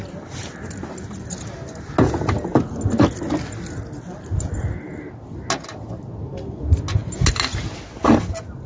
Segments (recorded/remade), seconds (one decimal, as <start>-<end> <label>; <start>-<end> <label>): 0.0-8.7 recorded